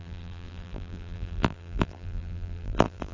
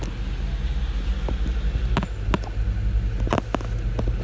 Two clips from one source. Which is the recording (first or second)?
second